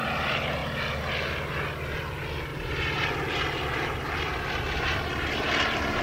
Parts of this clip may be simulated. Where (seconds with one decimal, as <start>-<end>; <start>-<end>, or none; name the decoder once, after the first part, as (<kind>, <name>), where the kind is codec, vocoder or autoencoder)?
2.5-6.0 (vocoder, BigVGAN v2)